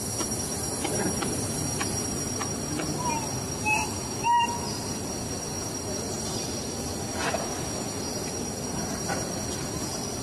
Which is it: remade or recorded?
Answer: recorded